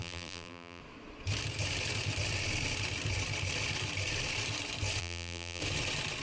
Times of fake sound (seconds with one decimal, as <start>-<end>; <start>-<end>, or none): 0.0-0.8; 5.0-5.6